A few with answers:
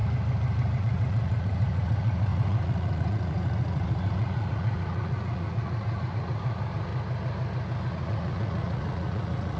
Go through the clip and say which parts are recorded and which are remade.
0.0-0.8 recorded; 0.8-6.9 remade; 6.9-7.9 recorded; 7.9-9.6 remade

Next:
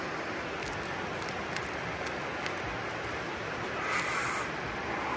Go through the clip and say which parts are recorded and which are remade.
0.0-5.2 recorded

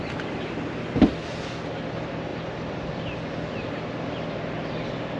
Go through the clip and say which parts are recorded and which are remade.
0.0-5.2 recorded

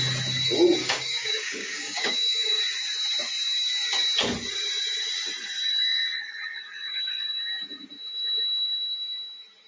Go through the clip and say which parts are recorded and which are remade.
0.0-0.8 recorded; 0.8-2.6 remade; 2.6-9.7 recorded